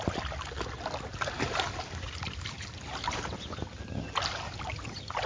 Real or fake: real